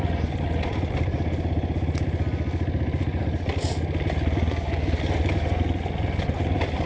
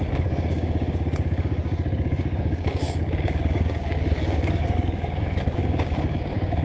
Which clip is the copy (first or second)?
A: second